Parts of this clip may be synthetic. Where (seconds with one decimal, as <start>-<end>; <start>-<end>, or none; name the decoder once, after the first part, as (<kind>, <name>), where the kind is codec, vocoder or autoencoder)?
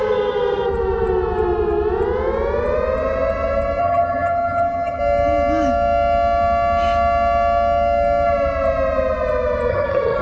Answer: 3.8-5.0 (vocoder, HiFi-GAN); 9.7-10.2